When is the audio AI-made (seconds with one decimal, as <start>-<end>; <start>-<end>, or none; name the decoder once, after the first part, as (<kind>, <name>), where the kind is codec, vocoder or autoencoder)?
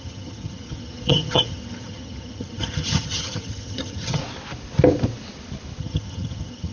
0.0-4.2 (vocoder, HiFi-GAN); 5.8-6.7